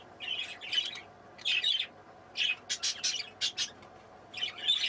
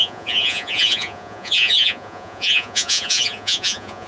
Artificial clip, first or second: second